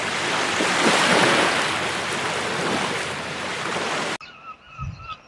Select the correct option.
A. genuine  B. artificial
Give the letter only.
A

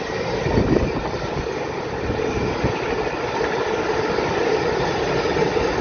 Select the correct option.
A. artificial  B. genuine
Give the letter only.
B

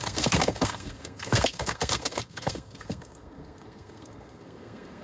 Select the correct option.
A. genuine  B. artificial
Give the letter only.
B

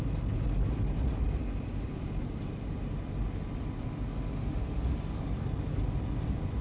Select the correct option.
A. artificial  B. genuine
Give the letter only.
B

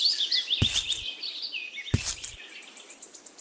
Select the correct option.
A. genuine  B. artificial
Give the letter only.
A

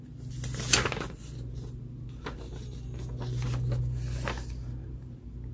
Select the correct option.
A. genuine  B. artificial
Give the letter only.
A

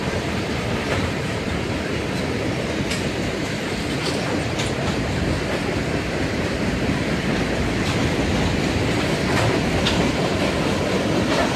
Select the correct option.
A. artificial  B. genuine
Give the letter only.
A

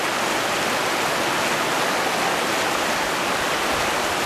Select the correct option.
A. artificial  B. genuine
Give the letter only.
B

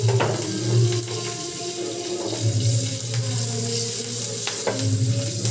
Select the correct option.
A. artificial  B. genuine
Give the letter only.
B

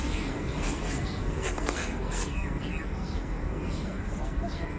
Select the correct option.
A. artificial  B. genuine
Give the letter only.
A